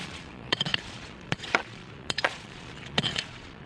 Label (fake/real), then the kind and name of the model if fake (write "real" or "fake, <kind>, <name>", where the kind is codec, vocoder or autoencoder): fake, vocoder, Vocos